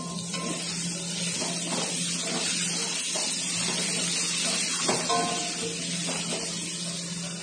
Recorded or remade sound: recorded